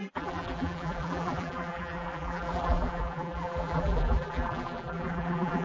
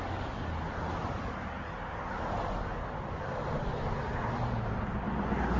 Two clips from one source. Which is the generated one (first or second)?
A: first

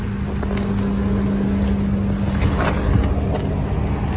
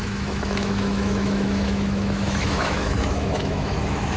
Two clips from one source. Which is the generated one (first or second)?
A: second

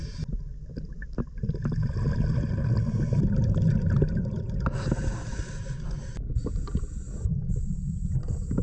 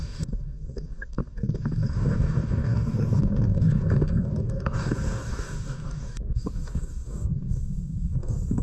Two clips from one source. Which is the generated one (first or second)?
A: second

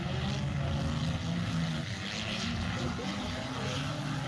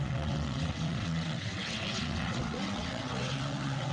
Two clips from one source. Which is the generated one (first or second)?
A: second